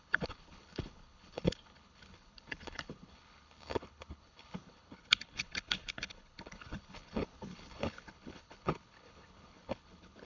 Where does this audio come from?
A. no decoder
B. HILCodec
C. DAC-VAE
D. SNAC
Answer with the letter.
B